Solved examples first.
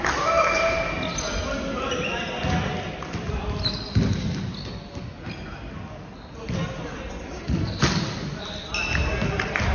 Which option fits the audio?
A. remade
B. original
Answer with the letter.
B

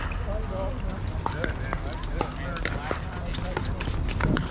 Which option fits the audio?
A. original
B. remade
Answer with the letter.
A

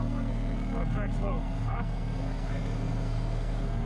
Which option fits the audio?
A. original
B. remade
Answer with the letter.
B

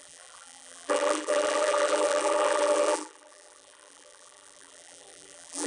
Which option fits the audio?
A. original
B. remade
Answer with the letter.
B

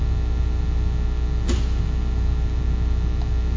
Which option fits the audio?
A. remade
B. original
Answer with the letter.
B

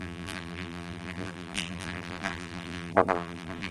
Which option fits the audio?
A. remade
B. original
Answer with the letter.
A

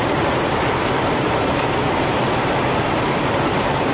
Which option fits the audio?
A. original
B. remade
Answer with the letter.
B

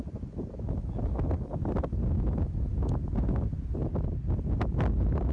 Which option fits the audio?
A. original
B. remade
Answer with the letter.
A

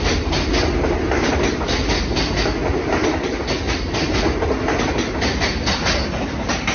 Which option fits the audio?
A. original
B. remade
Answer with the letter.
A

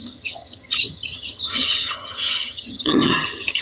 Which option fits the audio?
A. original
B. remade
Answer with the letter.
B